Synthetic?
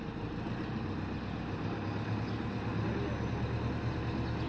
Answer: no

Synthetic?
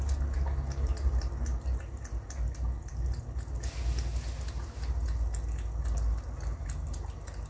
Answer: no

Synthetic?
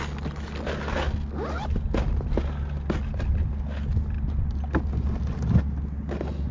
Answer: no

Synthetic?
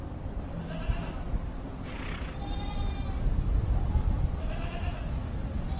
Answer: no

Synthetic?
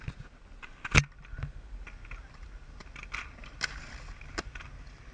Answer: no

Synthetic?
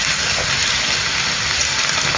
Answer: no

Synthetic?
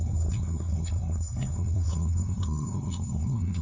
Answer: yes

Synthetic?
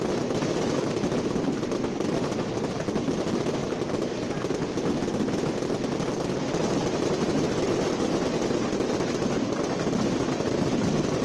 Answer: no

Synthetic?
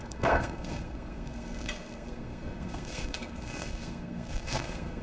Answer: yes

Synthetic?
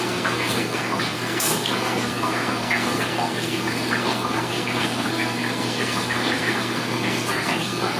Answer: yes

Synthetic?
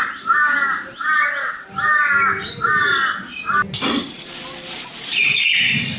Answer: no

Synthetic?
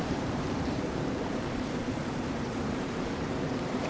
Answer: yes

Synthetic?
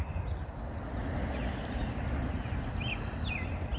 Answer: no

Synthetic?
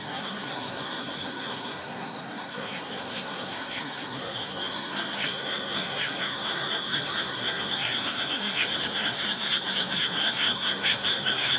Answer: yes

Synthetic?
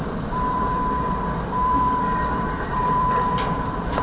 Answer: yes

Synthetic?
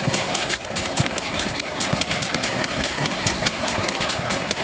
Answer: yes